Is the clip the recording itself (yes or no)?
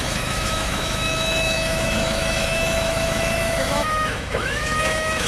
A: no